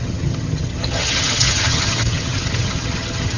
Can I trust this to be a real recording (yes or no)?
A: no